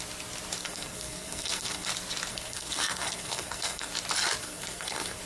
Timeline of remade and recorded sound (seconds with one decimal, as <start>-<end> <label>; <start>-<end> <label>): 0.0-0.6 recorded; 0.6-1.9 remade; 1.9-2.3 recorded; 2.3-3.9 remade; 3.9-4.4 recorded; 4.4-5.2 remade